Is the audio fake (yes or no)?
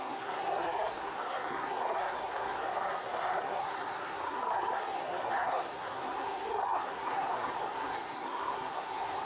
yes